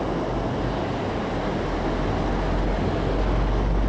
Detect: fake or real real